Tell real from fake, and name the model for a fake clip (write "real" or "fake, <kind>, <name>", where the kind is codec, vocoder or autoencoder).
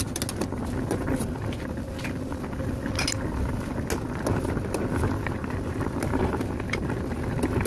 real